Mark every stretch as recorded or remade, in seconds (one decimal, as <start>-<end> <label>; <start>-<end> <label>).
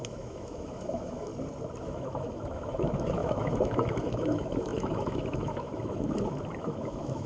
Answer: 0.0-1.3 remade; 1.3-1.8 recorded; 1.8-7.3 remade